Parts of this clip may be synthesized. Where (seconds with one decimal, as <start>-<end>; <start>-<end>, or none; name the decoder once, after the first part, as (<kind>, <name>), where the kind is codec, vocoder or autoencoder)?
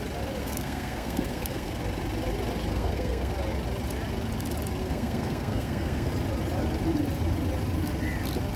0.4-1.8 (codec, SNAC); 2.7-3.3; 4.8-6.1